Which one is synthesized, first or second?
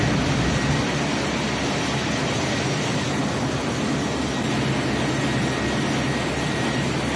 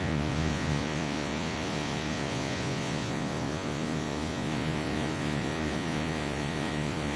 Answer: second